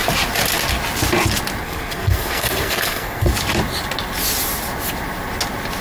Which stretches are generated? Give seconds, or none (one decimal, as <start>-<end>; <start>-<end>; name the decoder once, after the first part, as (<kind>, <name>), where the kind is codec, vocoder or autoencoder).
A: 1.6-3.3 (codec, SNAC)